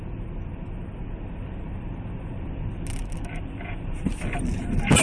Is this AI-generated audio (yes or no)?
no